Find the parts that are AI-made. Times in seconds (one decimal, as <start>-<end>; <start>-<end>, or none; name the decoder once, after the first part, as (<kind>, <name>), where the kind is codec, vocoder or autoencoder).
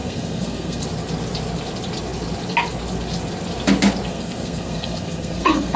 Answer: 0.0-0.8 (codec, SNAC); 4.1-5.8